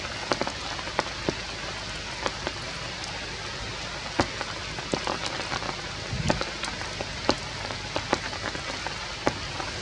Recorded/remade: recorded